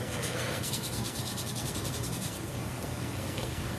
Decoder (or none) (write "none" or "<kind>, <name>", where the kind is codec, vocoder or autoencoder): codec, SNAC